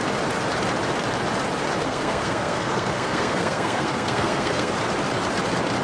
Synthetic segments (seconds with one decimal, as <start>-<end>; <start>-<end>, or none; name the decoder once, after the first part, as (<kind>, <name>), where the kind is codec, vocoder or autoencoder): 1.8-4.7 (codec, SNAC)